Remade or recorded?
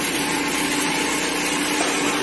recorded